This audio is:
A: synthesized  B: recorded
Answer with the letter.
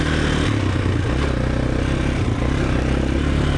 B